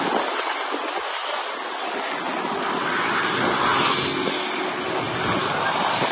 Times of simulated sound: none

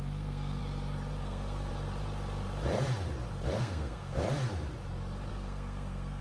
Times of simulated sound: 0.0-0.6 (codec, SNAC); 1.2-1.7; 3.6-4.2; 5.3-6.2

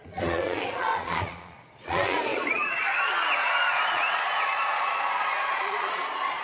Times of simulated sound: 0.0-6.4 (vocoder, Vocos)

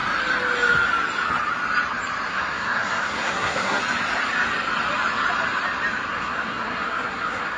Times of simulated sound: 2.3-3.8 (codec, SNAC); 6.1-7.6

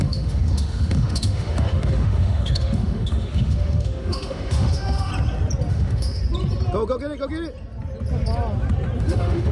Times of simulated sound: 0.0-5.1 (autoencoder, DAC-VAE); 5.7-6.2; 9.0-9.5

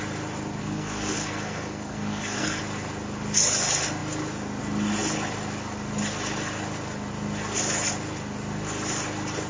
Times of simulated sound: 0.6-2.6 (codec, SNAC)

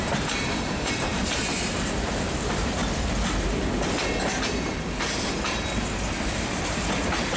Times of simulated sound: 0.0-2.8 (vocoder, BigVGAN v2); 6.2-7.4

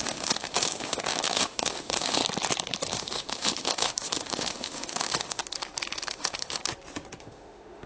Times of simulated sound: 0.0-2.2 (autoencoder, DAC-VAE); 2.9-5.4; 6.1-6.6; 7.2-7.9